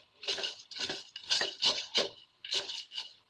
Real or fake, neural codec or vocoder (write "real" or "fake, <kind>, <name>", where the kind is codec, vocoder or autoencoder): fake, codec, HILCodec